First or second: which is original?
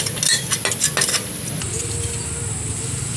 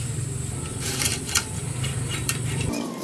first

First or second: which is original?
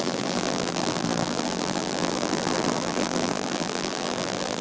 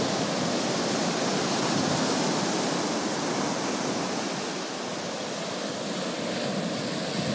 second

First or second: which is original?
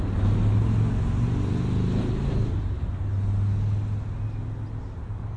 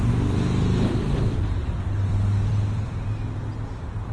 first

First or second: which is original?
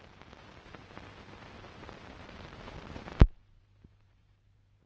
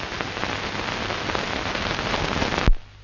second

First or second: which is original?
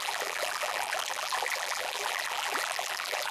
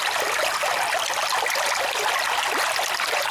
second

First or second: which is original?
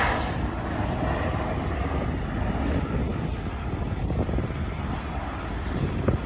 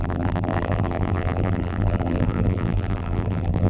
first